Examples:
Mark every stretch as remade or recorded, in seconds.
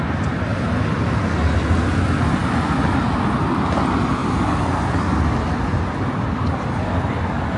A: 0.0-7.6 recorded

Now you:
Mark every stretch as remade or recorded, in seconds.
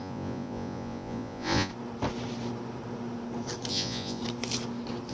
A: 0.0-1.7 remade; 1.7-3.7 recorded; 3.7-4.2 remade; 4.2-5.1 recorded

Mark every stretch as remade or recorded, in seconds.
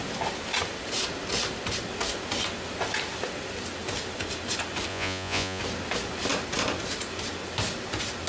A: 0.0-4.9 recorded; 4.9-5.6 remade; 5.6-8.3 recorded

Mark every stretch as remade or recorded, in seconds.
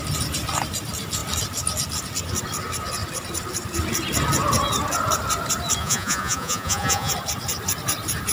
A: 0.0-5.8 recorded; 5.8-7.1 remade; 7.1-8.3 recorded